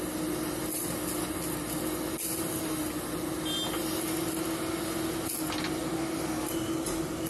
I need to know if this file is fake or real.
real